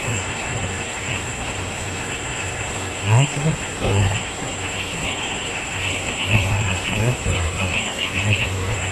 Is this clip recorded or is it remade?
remade